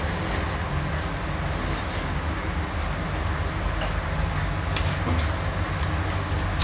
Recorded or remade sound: recorded